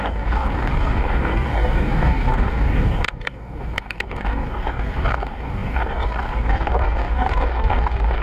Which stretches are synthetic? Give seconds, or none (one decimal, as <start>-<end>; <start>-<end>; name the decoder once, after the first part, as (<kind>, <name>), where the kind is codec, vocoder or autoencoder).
0.0-8.2 (codec, DAC)